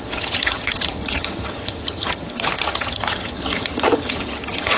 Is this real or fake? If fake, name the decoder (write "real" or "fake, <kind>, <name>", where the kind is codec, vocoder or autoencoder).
fake, vocoder, HiFi-GAN